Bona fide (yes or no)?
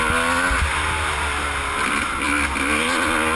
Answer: yes